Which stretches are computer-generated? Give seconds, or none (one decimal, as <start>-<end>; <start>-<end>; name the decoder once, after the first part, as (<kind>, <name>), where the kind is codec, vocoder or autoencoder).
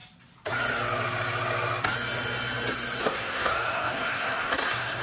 3.0-5.0 (codec, SNAC)